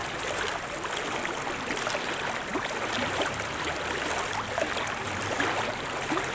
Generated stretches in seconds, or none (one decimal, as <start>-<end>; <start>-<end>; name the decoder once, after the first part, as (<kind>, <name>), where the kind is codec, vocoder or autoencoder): none